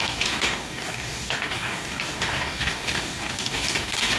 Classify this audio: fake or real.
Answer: fake